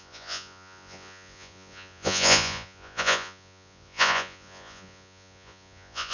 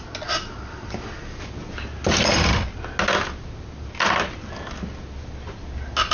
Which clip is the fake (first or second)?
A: first